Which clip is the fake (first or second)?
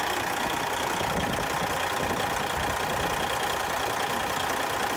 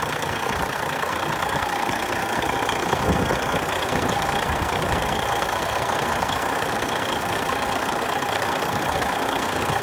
second